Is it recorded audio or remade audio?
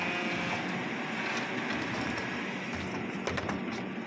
recorded